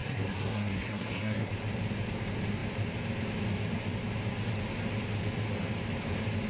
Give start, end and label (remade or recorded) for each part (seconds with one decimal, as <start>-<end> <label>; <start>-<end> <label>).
0.0-1.5 remade; 1.5-6.5 recorded